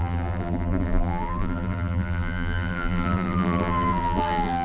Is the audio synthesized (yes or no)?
yes